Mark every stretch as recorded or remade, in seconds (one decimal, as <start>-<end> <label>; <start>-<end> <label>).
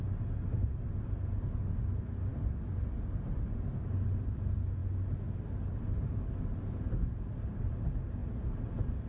0.0-9.1 recorded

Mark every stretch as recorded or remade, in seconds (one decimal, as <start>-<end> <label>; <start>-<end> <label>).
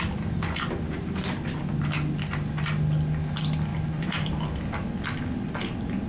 0.0-3.7 recorded; 3.7-4.6 remade; 4.6-6.1 recorded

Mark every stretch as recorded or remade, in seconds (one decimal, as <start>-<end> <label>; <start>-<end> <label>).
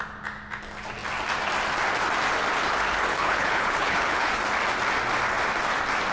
0.0-3.1 recorded; 3.1-4.4 remade; 4.4-6.1 recorded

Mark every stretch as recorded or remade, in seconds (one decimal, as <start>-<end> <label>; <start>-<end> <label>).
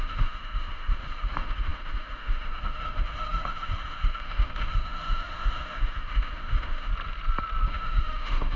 0.0-6.9 remade; 6.9-7.7 recorded; 7.7-8.6 remade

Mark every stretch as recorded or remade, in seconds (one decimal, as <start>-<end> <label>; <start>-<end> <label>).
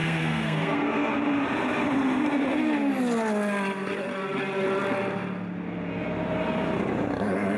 0.0-1.1 remade; 1.1-7.6 recorded